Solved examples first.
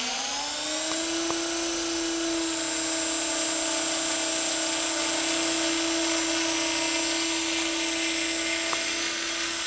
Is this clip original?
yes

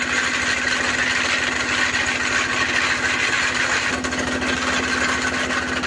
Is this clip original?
yes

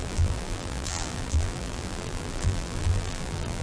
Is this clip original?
no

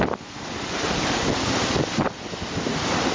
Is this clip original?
yes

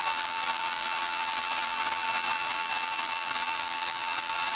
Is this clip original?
no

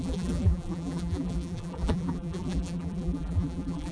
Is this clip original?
no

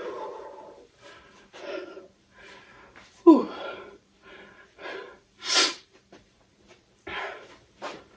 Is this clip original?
no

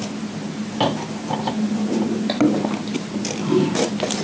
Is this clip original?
yes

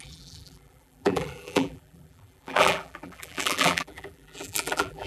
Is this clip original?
no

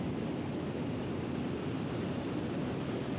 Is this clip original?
yes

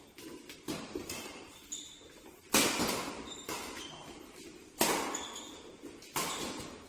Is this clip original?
yes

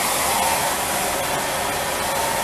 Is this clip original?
yes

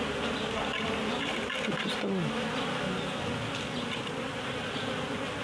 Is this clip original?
yes